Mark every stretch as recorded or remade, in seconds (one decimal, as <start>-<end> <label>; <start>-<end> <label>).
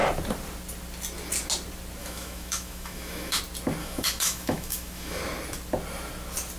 0.0-2.0 recorded; 2.0-3.4 remade; 3.4-3.8 recorded; 3.8-5.2 remade; 5.2-6.6 recorded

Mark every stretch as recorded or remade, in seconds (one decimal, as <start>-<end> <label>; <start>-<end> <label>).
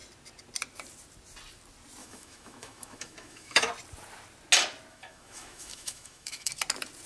0.0-2.0 recorded; 2.0-3.7 remade; 3.7-4.9 recorded; 4.9-6.5 remade; 6.5-7.1 recorded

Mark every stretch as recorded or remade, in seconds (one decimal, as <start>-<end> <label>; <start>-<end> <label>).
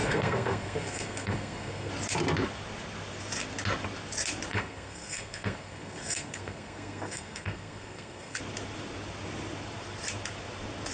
0.0-1.9 remade; 1.9-4.5 recorded; 4.5-8.4 remade; 8.4-10.9 recorded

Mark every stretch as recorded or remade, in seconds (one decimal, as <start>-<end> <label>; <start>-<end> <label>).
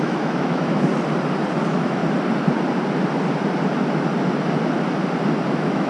0.0-0.9 remade; 0.9-1.6 recorded; 1.6-2.0 remade; 2.0-5.5 recorded; 5.5-5.9 remade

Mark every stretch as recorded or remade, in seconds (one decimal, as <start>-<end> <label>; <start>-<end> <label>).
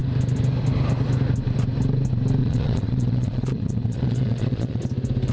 0.0-2.4 recorded; 2.4-4.8 remade; 4.8-5.3 recorded